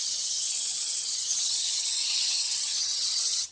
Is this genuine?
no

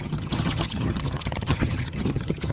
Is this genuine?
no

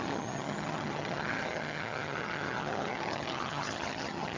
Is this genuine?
no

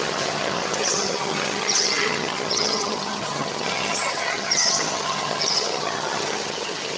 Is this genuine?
no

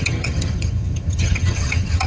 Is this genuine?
no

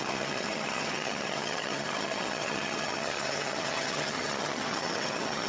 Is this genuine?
no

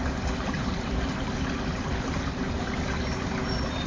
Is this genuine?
yes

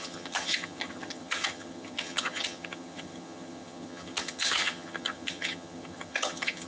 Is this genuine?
no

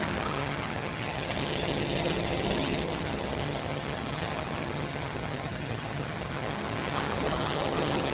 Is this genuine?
no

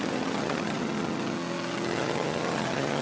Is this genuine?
no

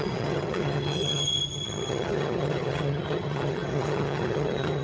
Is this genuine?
no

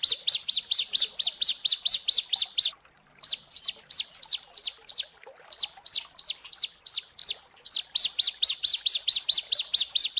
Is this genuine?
yes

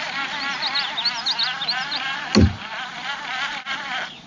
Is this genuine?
yes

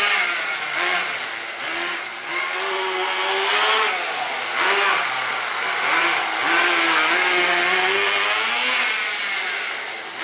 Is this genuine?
yes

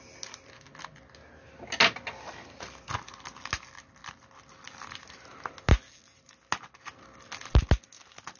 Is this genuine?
yes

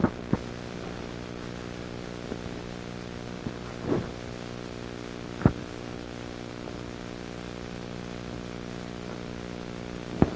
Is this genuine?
yes